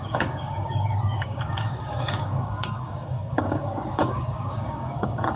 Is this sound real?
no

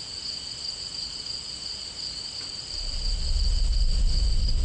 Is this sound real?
yes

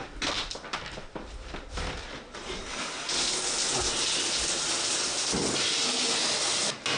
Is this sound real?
yes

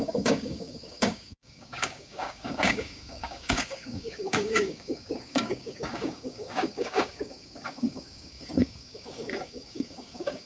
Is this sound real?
no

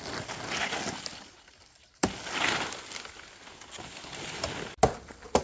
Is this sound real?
yes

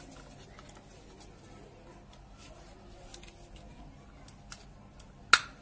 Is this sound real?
yes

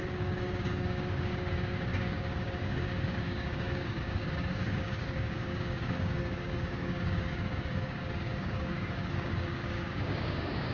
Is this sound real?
no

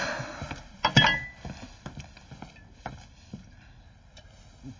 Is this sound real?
yes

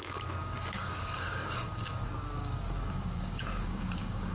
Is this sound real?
no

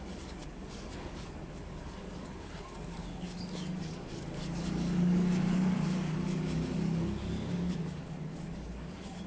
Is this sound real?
no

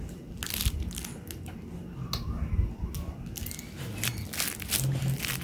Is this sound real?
yes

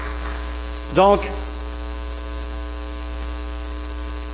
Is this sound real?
no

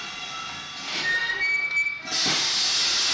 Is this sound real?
yes